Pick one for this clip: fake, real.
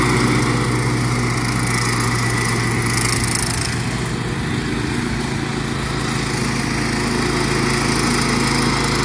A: real